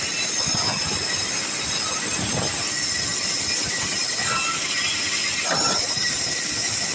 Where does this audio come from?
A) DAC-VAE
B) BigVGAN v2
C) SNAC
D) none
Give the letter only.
D